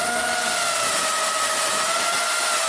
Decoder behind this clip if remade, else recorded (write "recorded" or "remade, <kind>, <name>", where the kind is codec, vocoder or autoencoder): recorded